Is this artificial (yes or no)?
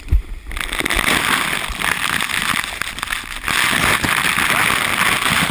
no